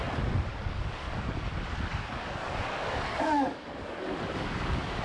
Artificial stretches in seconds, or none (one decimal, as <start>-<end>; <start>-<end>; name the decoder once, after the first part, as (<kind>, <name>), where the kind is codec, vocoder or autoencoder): 0.5-1.5 (codec, DAC); 1.9-5.0